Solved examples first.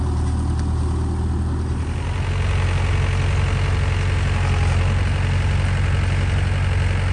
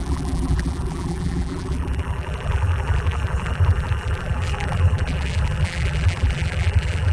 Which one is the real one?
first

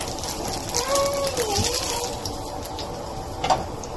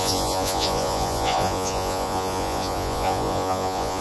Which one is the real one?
first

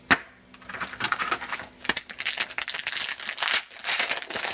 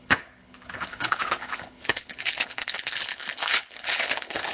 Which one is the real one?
first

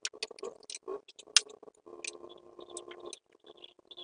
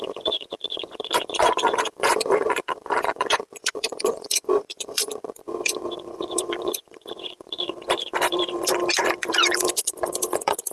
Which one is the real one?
first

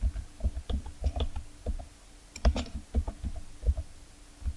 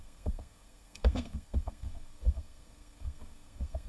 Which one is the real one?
first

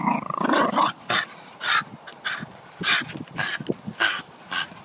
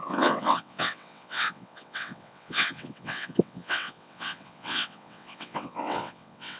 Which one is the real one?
first